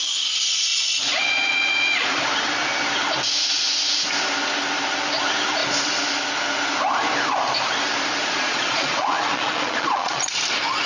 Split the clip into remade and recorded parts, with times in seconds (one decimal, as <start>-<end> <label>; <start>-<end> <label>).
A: 0.0-0.7 recorded; 0.7-2.2 remade; 2.2-8.2 recorded; 8.2-10.3 remade; 10.3-10.9 recorded